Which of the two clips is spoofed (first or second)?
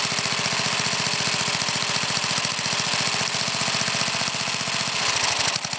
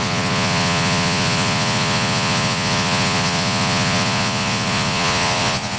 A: second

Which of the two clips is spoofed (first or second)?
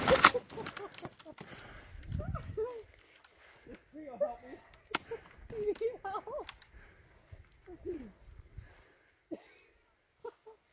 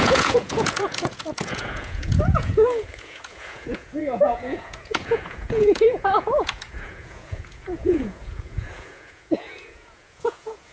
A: second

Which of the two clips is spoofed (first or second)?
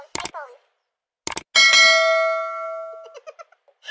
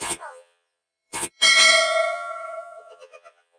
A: second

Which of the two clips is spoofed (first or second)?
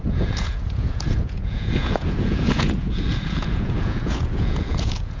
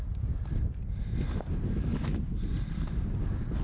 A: first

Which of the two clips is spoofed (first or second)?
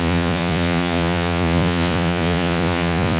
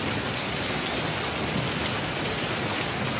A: first